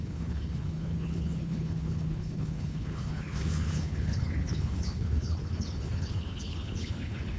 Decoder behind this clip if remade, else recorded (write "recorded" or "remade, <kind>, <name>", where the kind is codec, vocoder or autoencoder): remade, codec, HILCodec